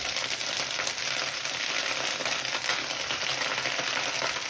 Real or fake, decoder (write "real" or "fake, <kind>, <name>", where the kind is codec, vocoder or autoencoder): real